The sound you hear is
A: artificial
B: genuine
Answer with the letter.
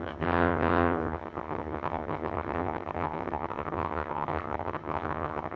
A